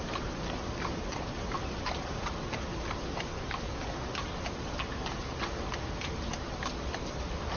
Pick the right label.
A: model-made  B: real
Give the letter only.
B